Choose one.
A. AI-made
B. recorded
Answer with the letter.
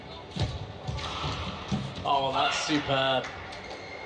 B